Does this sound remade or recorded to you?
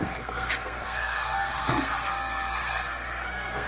remade